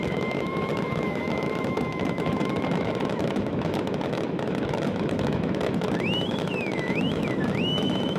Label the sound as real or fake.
fake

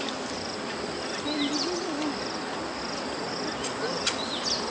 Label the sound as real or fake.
real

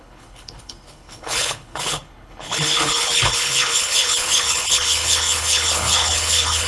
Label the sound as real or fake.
fake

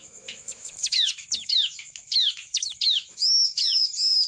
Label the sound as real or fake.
fake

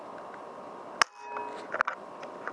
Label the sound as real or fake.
real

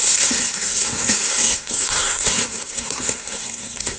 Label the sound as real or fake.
fake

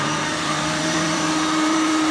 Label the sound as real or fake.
fake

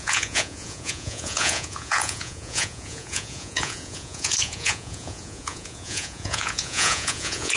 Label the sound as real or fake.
fake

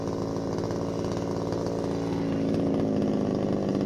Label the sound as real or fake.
real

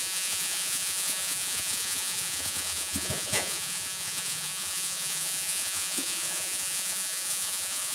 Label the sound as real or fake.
fake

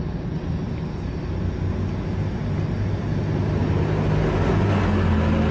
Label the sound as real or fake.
real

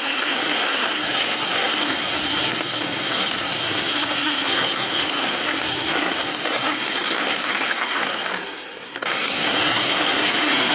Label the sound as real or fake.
fake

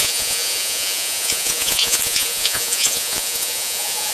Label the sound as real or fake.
fake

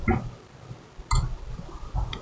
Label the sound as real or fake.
fake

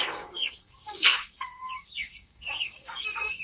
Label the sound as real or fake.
fake